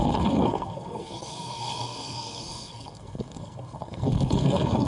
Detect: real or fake fake